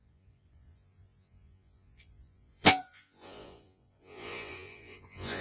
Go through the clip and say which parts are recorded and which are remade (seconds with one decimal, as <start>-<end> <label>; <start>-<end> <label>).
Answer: 0.0-5.4 remade